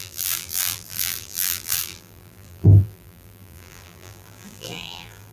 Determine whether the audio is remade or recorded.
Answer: remade